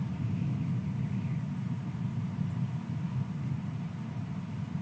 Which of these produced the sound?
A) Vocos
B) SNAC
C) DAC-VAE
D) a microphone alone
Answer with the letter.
D